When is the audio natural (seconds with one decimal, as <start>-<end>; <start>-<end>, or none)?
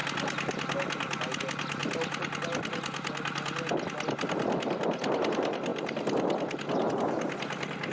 0.0-7.9